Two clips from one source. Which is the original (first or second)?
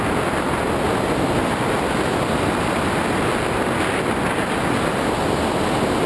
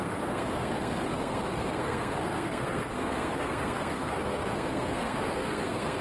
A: first